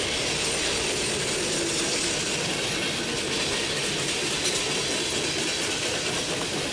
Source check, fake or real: real